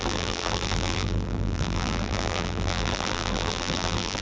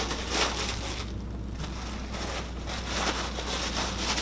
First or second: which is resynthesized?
first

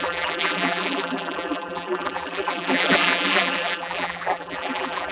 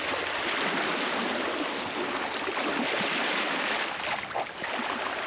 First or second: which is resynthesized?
first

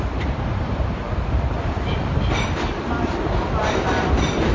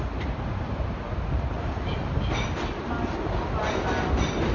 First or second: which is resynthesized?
first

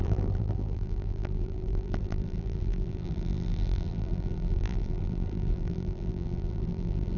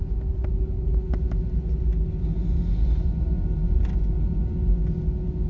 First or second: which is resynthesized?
first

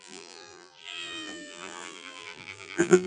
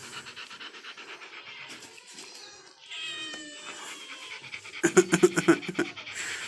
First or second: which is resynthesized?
first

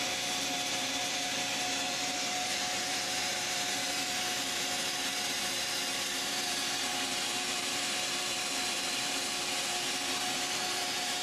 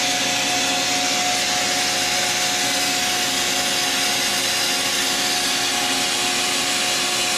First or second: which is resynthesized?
first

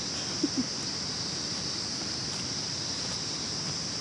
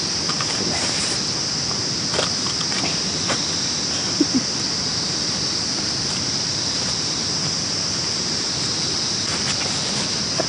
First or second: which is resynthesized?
second